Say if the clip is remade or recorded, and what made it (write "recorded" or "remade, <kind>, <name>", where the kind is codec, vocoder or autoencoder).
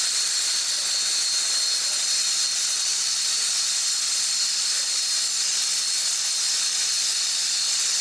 recorded